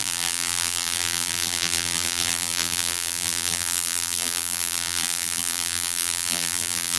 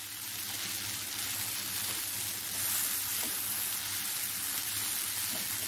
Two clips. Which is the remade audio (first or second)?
first